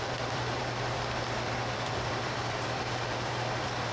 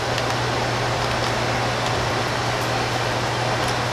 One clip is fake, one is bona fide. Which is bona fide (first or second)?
second